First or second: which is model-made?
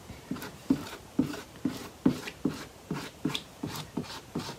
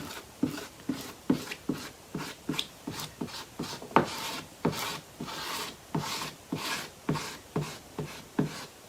first